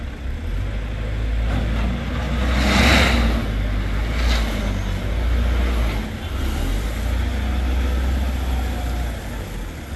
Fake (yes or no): no